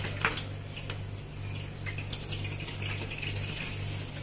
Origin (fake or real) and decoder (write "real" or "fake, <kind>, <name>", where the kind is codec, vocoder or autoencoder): real